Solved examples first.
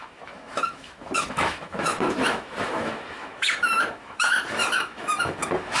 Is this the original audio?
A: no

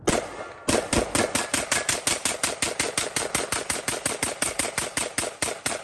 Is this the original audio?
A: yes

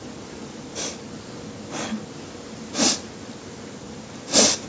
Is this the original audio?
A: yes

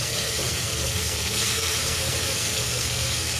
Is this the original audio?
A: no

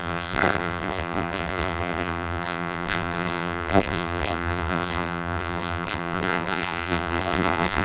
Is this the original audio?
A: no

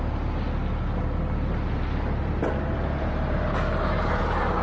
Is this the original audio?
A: yes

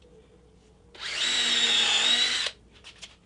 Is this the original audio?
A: yes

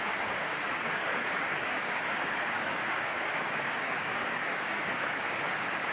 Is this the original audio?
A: no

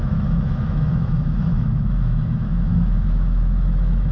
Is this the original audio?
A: no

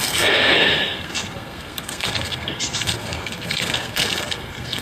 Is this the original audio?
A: no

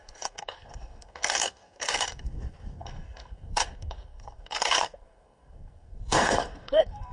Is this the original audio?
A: no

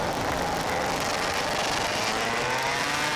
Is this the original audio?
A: yes